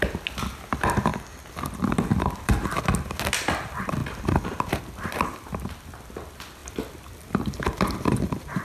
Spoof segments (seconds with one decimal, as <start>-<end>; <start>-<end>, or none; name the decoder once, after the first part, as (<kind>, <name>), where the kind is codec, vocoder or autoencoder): 0.0-1.1 (vocoder, BigVGAN v2); 1.6-8.6